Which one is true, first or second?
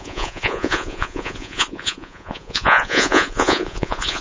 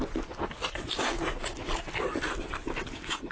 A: second